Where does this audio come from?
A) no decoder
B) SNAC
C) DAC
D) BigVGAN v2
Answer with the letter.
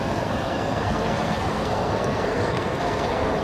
B